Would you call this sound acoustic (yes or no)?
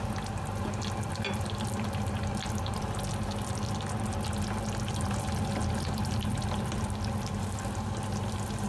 yes